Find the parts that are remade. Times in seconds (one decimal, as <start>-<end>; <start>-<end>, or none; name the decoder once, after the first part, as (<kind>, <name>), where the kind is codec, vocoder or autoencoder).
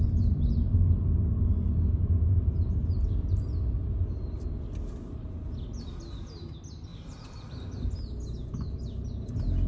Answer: 1.9-4.2 (vocoder, BigVGAN v2); 6.9-7.8